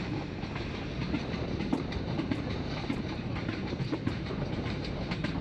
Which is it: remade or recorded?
remade